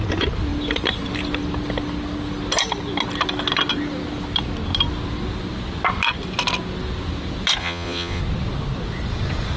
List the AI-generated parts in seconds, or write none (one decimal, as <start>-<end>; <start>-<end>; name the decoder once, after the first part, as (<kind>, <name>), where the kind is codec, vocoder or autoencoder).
7.6-8.2 (vocoder, Vocos)